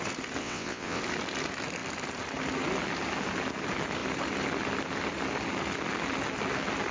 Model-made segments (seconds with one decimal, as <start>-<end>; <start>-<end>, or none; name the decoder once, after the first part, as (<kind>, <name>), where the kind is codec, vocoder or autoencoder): 0.4-1.0 (vocoder, WaveNeXt)